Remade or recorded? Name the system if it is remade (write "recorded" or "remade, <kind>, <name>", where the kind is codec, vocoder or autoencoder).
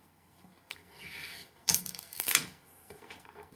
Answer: remade, codec, SNAC